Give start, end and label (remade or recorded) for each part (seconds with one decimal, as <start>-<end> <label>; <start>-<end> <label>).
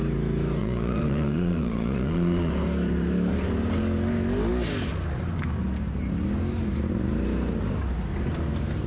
0.0-0.6 recorded; 0.6-2.5 remade; 2.5-8.9 recorded